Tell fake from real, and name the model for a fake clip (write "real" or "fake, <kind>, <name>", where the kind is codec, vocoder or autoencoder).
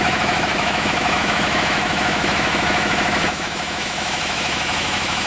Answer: fake, autoencoder, DAC-VAE